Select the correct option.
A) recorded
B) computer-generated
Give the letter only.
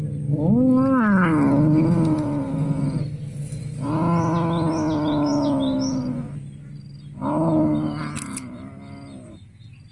A